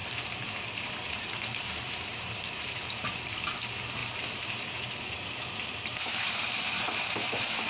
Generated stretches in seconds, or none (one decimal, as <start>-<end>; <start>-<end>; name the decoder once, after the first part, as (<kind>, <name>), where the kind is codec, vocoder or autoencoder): 0.0-2.5 (vocoder, BigVGAN v2); 4.0-7.7